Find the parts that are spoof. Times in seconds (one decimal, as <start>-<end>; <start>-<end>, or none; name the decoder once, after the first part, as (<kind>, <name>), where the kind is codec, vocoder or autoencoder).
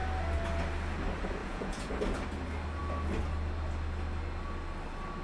1.4-1.9 (vocoder, Vocos)